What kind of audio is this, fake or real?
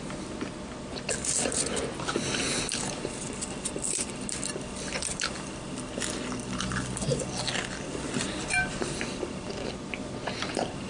real